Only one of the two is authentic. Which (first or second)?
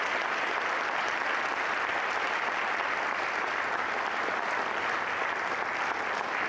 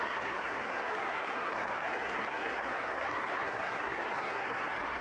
first